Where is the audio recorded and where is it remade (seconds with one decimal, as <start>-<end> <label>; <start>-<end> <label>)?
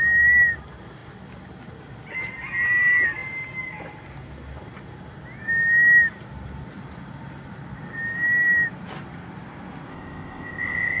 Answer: 0.0-9.9 recorded; 9.9-11.0 remade